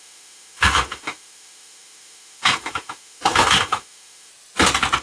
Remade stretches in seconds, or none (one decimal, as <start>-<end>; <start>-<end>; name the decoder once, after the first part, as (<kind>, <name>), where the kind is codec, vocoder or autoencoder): 0.0-4.3 (autoencoder, DAC-VAE)

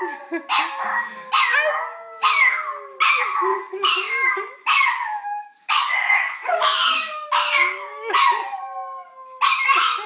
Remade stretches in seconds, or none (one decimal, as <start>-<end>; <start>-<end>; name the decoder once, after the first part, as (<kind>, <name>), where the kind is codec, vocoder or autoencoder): 3.5-8.6 (codec, DAC)